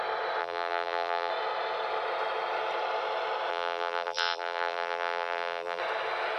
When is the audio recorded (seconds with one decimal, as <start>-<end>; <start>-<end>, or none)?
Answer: 0.0-0.4; 1.3-3.5; 5.8-6.4

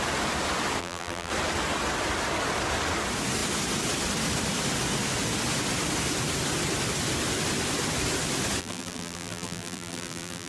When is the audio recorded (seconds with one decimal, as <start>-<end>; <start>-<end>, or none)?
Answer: 0.0-0.8; 1.3-8.6

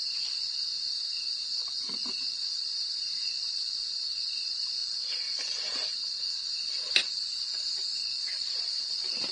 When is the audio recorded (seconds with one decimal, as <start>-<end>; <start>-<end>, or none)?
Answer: 0.0-1.6; 3.9-8.3